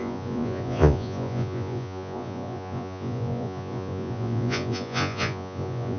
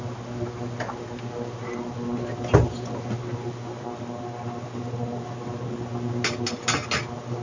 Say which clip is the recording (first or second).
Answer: second